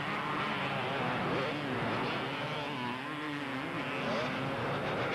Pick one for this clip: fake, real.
real